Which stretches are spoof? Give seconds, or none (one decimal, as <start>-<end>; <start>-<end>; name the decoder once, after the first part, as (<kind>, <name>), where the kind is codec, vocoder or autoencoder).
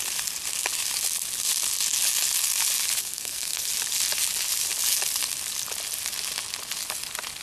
3.0-3.7 (codec, SNAC)